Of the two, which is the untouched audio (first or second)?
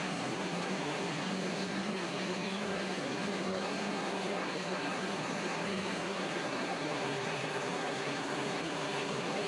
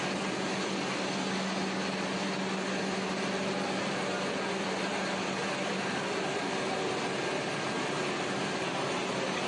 second